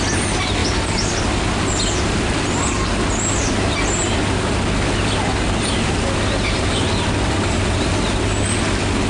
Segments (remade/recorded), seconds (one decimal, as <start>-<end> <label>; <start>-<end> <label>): 0.0-9.1 recorded